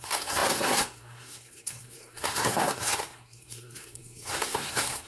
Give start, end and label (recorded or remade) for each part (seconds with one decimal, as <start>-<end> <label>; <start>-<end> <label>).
0.0-5.1 remade